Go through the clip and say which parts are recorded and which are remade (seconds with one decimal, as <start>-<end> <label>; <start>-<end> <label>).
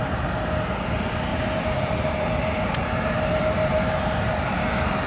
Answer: 0.0-1.3 recorded; 1.3-4.3 remade; 4.3-5.1 recorded